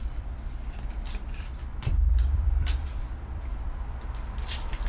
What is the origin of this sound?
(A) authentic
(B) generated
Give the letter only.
B